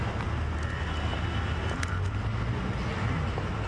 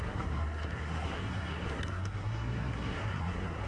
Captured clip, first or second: first